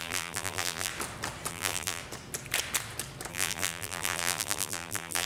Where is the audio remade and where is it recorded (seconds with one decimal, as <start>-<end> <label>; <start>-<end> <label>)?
0.0-0.9 remade; 0.9-1.5 recorded; 1.5-2.0 remade; 2.0-3.3 recorded; 3.3-5.3 remade